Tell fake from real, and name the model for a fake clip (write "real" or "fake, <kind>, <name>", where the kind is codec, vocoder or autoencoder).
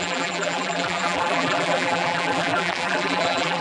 fake, vocoder, BigVGAN v2